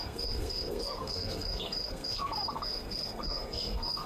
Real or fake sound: fake